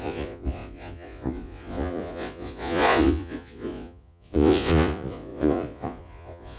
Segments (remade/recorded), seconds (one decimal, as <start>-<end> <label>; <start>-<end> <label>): 0.0-6.6 remade